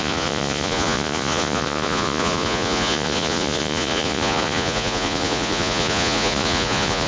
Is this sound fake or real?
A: fake